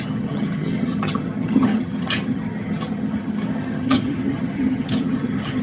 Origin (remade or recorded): remade